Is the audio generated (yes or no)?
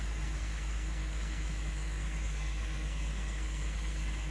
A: yes